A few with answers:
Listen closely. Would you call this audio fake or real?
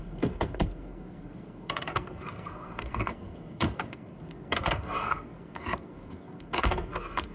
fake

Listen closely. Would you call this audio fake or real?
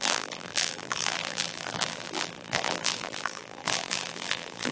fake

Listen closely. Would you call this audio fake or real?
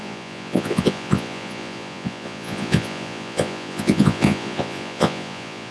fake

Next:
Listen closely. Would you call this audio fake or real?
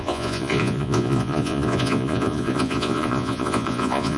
fake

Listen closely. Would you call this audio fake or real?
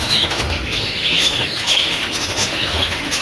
fake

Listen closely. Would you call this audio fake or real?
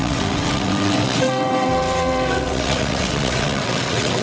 fake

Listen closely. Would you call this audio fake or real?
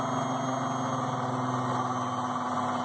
real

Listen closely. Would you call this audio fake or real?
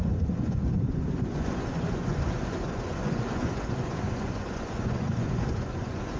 fake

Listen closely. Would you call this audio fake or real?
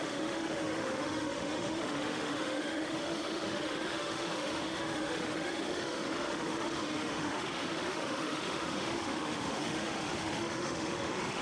fake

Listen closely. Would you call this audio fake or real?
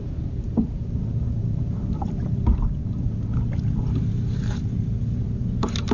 fake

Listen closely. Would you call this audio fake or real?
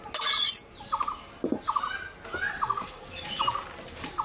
real